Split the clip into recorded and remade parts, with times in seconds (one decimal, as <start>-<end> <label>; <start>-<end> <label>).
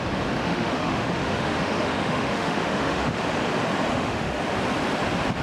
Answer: 0.0-0.4 recorded; 0.4-3.2 remade; 3.2-3.9 recorded; 3.9-4.4 remade; 4.4-5.4 recorded